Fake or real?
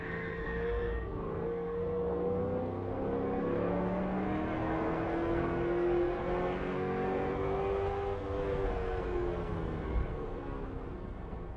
fake